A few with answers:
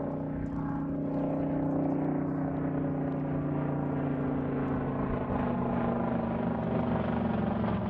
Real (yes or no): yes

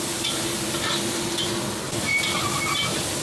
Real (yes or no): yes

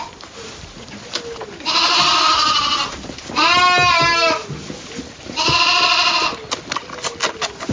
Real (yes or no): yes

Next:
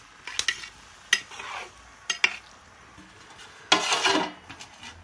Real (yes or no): yes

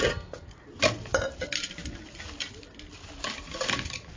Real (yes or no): yes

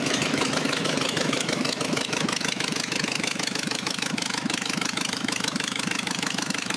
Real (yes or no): no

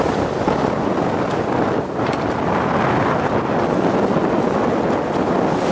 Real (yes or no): yes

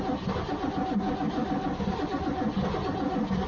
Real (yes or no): yes